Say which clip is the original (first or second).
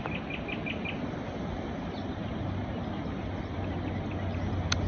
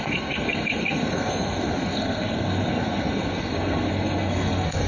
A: first